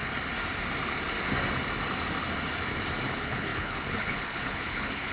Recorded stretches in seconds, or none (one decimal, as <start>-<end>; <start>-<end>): 0.0-3.1